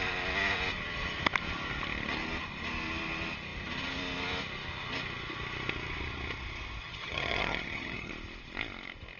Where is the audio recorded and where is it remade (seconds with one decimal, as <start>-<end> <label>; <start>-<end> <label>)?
0.0-6.8 recorded; 6.8-8.1 remade; 8.1-9.2 recorded